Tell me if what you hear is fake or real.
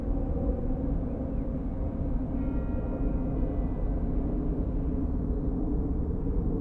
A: real